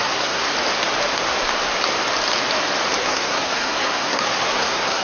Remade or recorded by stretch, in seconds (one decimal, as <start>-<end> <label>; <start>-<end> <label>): 0.0-0.5 remade; 0.5-3.0 recorded; 3.0-5.0 remade